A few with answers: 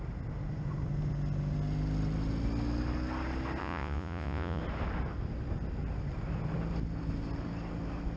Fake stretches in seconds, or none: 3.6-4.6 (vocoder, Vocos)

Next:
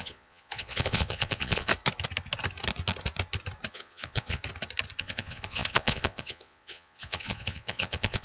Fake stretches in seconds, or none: 0.0-1.7 (vocoder, Vocos); 3.7-4.4; 5.0-8.2

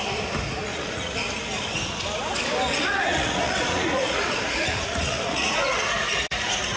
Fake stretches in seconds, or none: 0.7-1.3 (vocoder, Vocos); 2.7-6.8

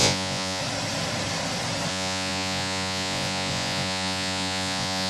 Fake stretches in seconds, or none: 0.0-0.6 (vocoder, Vocos); 1.9-5.1

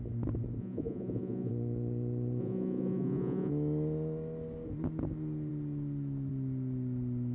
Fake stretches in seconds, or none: 0.6-1.5 (vocoder, Vocos); 2.4-3.5

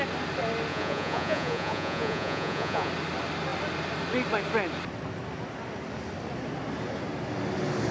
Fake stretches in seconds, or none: 0.7-2.9 (vocoder, Vocos)

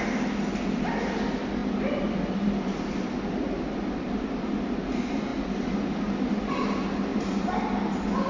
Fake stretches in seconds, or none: none